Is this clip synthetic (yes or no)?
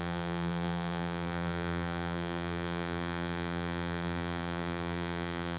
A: yes